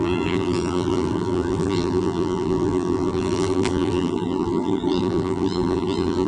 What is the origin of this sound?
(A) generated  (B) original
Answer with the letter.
A